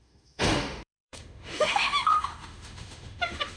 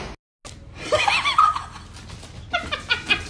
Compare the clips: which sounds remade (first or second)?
first